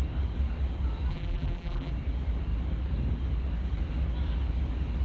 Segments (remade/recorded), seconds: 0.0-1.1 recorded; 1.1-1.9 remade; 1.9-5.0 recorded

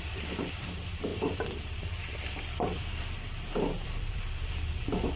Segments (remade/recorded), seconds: 0.0-5.2 remade

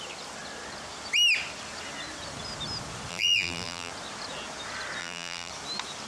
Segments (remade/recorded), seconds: 0.0-3.1 recorded; 3.1-3.9 remade; 3.9-5.0 recorded; 5.0-5.5 remade; 5.5-6.1 recorded

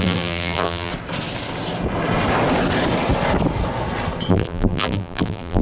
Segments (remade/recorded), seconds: 0.0-0.9 remade; 0.9-4.3 recorded; 4.3-5.6 remade

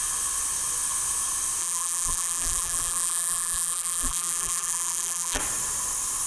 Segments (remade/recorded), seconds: 0.0-1.6 recorded; 1.6-5.4 remade; 5.4-6.3 recorded

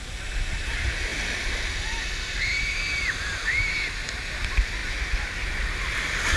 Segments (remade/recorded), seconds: 0.0-1.1 recorded; 1.1-3.6 remade; 3.6-6.4 recorded

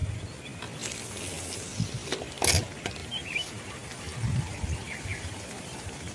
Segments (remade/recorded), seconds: 0.0-3.0 recorded; 3.0-6.1 remade

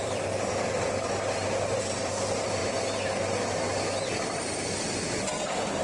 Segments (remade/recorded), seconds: 0.0-2.6 remade; 2.6-4.4 recorded; 4.4-5.8 remade